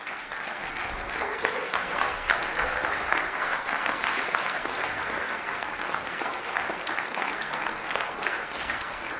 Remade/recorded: remade